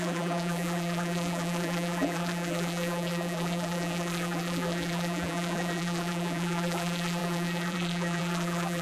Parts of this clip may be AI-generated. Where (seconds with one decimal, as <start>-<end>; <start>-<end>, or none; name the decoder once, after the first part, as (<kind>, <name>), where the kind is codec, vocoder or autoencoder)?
0.0-8.8 (vocoder, BigVGAN v2)